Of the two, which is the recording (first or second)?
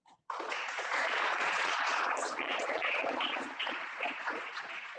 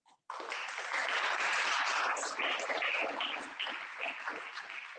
second